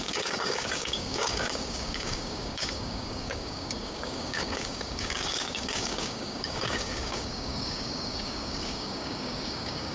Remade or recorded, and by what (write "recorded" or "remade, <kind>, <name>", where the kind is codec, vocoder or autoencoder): remade, codec, DAC